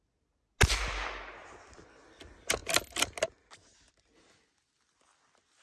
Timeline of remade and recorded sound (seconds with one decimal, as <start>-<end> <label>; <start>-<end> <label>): 0.0-5.6 recorded